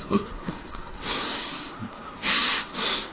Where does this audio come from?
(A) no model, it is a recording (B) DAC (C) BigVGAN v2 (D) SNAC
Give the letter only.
D